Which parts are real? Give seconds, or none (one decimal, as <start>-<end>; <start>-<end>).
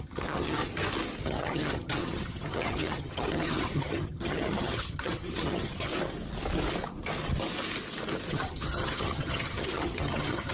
0.6-1.2; 5.9-8.3